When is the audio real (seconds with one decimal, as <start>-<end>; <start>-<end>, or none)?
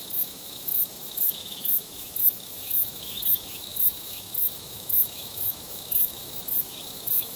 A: none